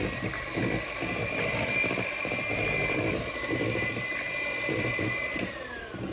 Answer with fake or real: fake